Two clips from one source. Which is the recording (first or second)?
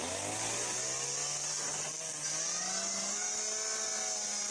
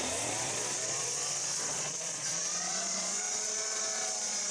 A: first